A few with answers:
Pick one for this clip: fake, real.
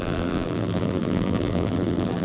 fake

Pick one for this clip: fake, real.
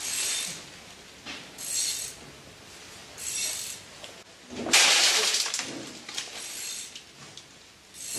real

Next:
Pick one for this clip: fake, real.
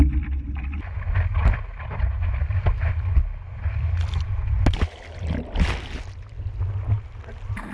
real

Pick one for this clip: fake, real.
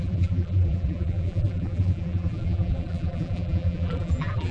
fake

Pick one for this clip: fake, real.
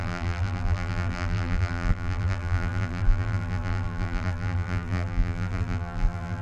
fake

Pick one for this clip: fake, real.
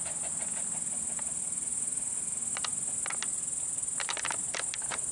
real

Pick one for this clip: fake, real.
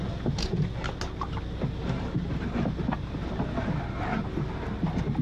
real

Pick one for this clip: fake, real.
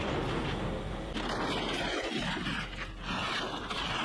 fake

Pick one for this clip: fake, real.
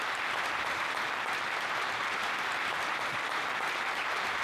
fake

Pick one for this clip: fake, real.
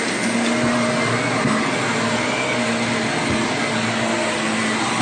real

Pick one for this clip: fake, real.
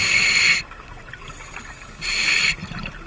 real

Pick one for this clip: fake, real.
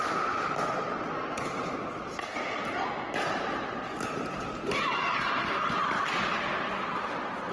real